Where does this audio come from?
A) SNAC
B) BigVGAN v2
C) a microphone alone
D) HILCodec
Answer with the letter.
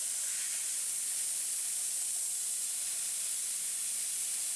C